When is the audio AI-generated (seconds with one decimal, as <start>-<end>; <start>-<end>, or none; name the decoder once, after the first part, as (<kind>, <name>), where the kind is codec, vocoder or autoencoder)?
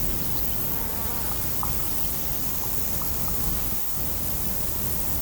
3.4-4.0 (codec, DAC)